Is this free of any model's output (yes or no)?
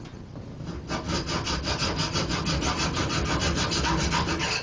yes